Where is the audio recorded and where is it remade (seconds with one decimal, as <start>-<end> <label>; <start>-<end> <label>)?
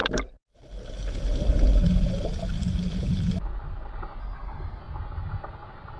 0.0-4.2 recorded; 4.2-4.8 remade; 4.8-6.0 recorded